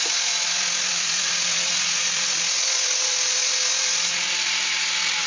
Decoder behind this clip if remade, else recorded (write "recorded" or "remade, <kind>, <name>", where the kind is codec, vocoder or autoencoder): recorded